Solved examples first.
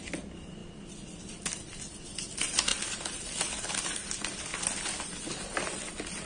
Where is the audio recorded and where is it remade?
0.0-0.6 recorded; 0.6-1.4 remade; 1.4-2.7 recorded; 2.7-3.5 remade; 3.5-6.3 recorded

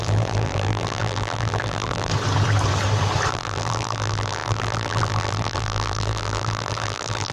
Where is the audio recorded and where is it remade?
0.0-2.1 remade; 2.1-3.3 recorded; 3.3-7.3 remade